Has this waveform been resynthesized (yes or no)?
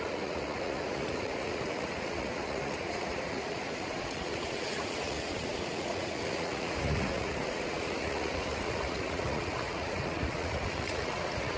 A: yes